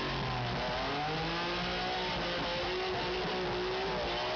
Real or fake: real